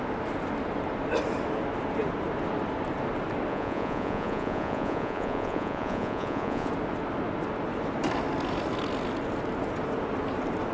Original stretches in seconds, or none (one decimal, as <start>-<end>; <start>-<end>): 0.0-3.5; 6.7-10.7